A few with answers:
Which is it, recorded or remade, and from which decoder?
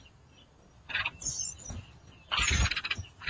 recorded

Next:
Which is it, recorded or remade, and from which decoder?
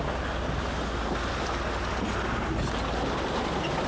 recorded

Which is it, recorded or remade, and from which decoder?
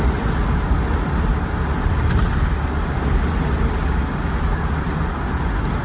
recorded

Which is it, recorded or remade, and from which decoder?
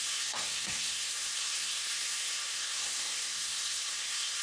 remade, codec, SNAC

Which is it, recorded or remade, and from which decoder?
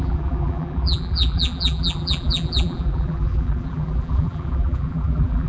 remade, vocoder, BigVGAN v2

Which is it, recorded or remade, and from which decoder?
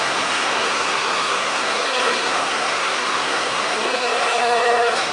remade, codec, SNAC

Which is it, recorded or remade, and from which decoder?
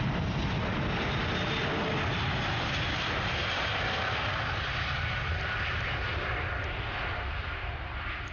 recorded